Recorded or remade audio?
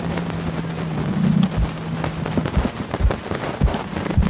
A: recorded